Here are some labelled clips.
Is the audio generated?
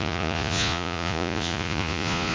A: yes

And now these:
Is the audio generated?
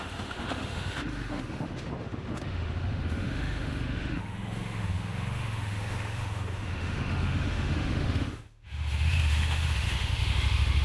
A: yes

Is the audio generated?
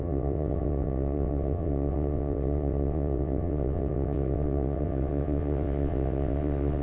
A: yes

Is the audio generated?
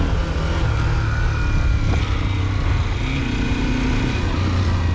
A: no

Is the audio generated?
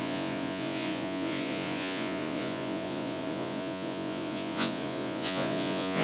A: yes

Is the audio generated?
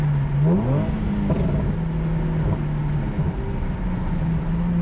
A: no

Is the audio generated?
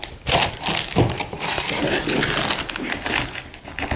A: no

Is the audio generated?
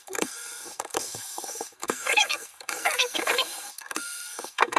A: yes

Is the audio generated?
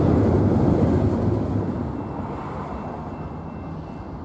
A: no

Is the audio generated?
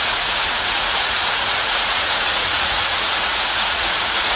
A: yes